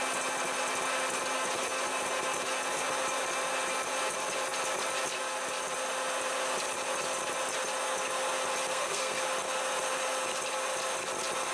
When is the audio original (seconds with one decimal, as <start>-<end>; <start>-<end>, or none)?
0.0-8.7; 9.2-11.5